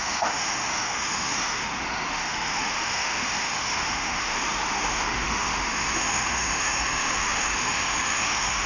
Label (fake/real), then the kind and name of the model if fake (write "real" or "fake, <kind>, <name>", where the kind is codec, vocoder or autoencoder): fake, autoencoder, DAC-VAE